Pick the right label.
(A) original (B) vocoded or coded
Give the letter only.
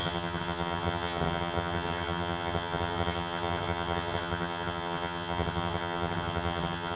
B